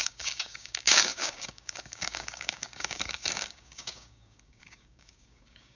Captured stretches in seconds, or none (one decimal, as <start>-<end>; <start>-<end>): none